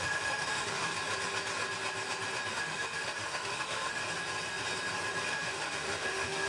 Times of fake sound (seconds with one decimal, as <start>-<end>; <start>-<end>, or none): 0.0-0.9; 2.5-4.0; 5.3-6.5